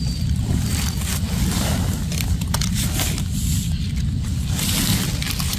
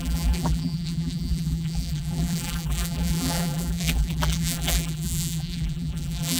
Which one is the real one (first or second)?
first